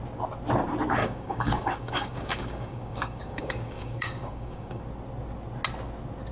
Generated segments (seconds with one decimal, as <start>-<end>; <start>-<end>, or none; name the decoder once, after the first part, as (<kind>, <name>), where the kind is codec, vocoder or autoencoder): 1.0-4.8 (codec, DAC)